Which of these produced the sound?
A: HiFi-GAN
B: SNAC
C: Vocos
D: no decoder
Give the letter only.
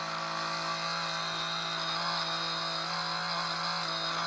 D